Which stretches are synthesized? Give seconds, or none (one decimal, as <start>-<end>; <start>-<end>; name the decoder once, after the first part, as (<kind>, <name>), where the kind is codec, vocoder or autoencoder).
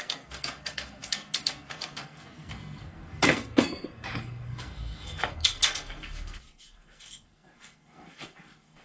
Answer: 0.0-8.8 (codec, SNAC)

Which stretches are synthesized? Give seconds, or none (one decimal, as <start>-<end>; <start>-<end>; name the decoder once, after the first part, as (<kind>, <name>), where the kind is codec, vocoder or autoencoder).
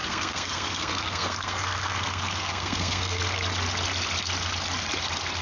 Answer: 0.0-3.2 (codec, SNAC)